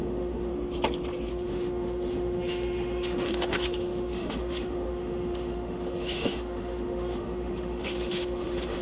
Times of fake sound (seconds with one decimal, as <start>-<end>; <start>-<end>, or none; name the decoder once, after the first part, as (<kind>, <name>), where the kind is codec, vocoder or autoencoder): 0.0-0.5 (autoencoder, DAC-VAE); 1.3-8.8